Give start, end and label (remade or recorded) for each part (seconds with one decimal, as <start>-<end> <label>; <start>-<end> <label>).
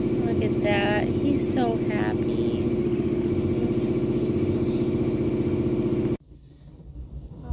0.0-2.8 recorded; 2.8-3.3 remade; 3.3-7.5 recorded